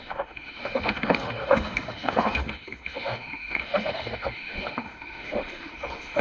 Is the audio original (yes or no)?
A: no